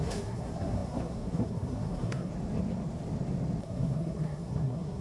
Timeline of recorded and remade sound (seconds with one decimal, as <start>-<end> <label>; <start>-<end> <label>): 0.0-2.3 remade; 2.3-3.6 recorded; 3.6-5.0 remade